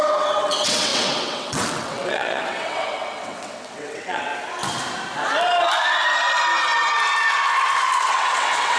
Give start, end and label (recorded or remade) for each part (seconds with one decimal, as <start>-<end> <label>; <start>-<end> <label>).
0.0-4.3 remade; 4.3-8.1 recorded; 8.1-8.8 remade